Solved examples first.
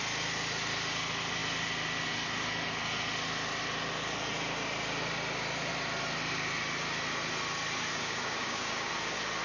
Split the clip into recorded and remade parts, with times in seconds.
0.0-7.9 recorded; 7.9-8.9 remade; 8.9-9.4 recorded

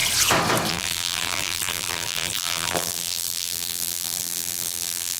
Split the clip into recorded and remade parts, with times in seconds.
0.0-0.7 recorded; 0.7-5.2 remade

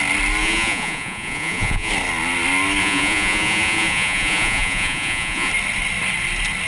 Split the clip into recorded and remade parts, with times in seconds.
0.0-0.4 recorded; 0.4-1.9 remade; 1.9-2.8 recorded; 2.8-5.5 remade; 5.5-6.7 recorded

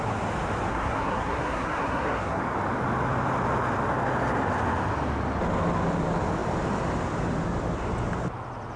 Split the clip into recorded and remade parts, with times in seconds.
0.0-0.7 recorded; 0.7-2.4 remade; 2.4-8.8 recorded